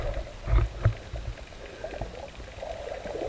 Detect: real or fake real